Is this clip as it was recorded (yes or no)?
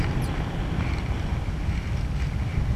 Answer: yes